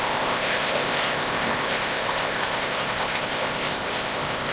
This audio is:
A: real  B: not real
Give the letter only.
B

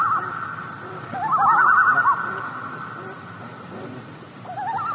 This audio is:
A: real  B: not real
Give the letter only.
A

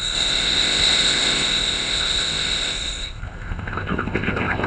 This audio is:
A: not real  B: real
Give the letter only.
A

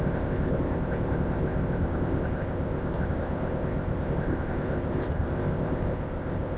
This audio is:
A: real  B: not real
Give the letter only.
B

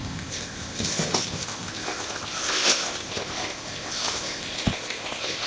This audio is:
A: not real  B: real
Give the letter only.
A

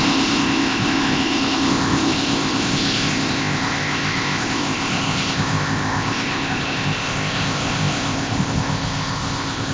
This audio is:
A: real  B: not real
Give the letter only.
B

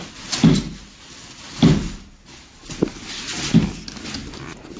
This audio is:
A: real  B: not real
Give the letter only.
A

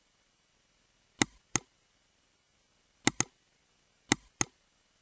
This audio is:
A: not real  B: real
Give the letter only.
B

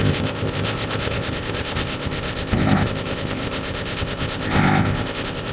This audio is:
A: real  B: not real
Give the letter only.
B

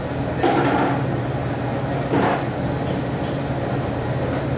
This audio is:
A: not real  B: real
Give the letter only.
B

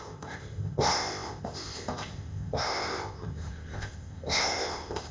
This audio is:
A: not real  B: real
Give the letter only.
A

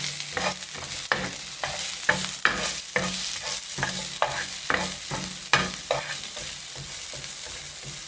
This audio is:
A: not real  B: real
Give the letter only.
B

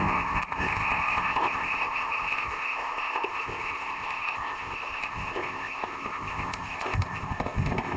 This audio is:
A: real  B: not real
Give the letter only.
B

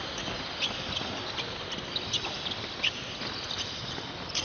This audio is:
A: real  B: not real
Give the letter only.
A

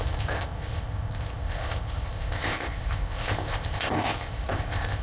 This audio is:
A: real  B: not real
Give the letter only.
B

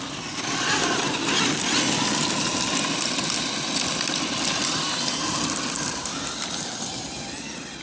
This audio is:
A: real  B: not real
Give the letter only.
A